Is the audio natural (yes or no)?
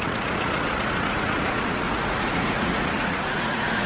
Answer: no